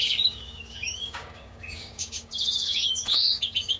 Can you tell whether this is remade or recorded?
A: remade